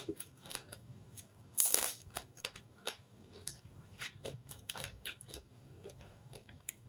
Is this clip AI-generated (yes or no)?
yes